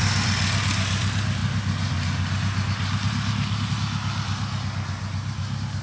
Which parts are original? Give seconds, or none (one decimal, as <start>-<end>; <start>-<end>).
0.0-5.8